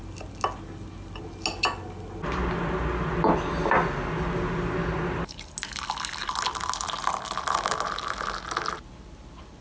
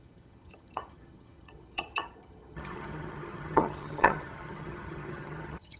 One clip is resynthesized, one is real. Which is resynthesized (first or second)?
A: second